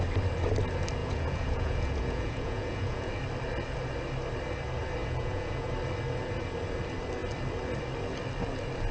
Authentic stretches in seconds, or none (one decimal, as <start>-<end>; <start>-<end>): 0.0-1.0; 3.1-5.0; 5.7-8.9